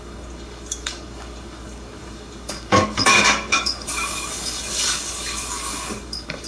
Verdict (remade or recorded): remade